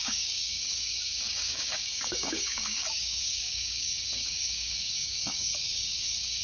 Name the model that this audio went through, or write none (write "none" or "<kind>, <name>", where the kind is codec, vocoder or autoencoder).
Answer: codec, DAC